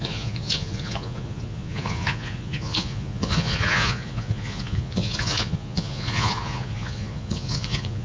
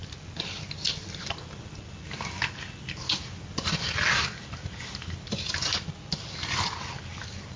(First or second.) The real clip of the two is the second